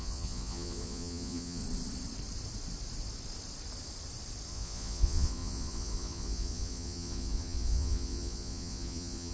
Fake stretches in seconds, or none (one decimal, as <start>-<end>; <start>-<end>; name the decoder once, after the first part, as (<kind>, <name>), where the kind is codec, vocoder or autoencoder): 0.0-1.6 (vocoder, Vocos); 4.5-9.3